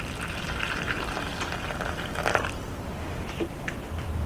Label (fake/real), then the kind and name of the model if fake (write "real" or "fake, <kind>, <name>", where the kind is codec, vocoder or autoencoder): real